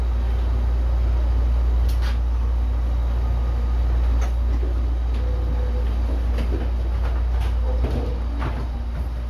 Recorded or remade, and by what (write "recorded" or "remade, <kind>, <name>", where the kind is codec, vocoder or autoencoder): recorded